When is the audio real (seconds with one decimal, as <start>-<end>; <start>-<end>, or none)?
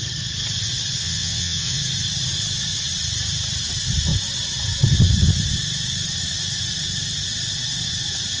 0.0-1.0; 1.8-8.4